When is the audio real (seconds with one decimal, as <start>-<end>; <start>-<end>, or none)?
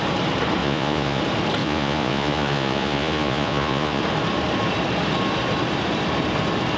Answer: 0.0-0.6; 1.2-1.6; 4.0-6.8